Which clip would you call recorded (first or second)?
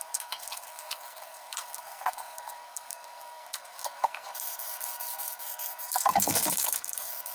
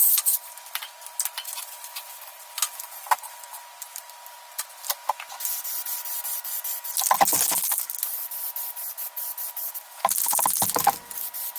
second